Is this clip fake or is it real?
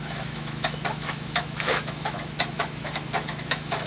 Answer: fake